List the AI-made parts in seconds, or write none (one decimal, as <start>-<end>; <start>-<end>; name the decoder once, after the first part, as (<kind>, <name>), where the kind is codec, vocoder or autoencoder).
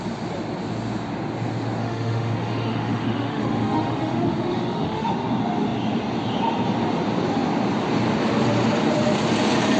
1.8-5.1 (autoencoder, DAC-VAE)